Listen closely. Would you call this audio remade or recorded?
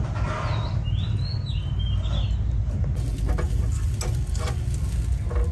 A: recorded